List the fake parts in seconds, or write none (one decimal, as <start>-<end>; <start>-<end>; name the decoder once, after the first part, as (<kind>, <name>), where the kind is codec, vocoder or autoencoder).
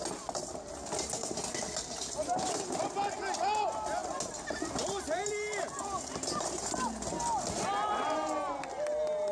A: none